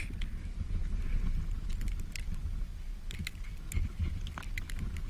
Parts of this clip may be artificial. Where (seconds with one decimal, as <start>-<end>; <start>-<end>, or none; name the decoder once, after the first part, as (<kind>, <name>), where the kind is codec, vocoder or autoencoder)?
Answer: none